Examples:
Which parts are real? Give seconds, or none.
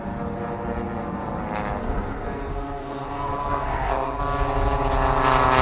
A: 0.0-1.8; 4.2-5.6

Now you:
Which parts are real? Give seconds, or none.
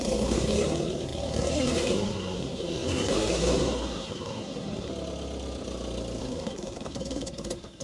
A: 4.9-6.2